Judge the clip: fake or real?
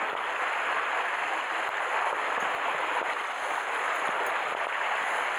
real